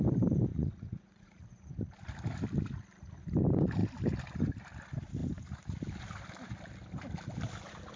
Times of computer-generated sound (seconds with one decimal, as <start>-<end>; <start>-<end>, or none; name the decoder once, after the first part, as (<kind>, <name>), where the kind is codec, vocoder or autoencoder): 0.5-1.7 (vocoder, Vocos)